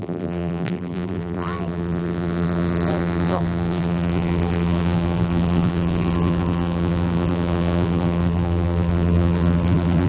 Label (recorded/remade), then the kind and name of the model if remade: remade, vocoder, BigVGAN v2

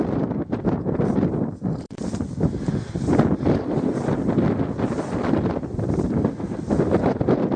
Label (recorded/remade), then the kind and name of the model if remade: recorded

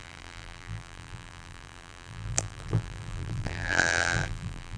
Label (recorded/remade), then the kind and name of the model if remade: remade, vocoder, BigVGAN v2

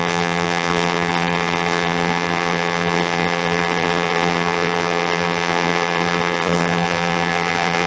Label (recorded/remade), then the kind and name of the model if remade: remade, vocoder, BigVGAN v2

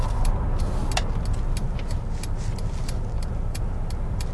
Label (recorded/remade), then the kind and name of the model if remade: recorded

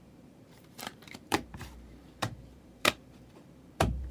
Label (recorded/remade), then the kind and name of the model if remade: remade, vocoder, BigVGAN v2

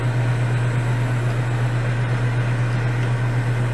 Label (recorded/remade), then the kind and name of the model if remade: recorded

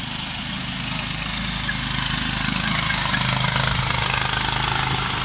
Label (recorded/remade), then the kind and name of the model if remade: recorded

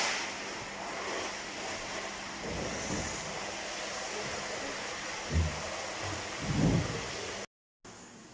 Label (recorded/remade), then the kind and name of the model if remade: recorded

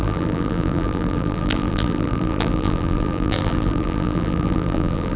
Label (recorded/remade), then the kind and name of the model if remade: remade, vocoder, BigVGAN v2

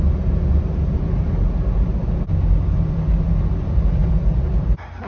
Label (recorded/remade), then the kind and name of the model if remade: recorded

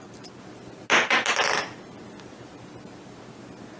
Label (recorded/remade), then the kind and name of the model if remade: recorded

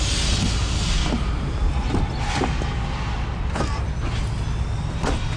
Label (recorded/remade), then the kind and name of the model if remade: recorded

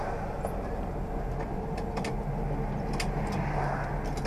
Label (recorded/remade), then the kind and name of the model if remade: recorded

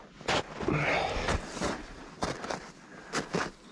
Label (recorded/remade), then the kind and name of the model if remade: recorded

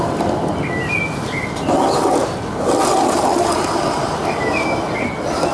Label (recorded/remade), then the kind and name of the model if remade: recorded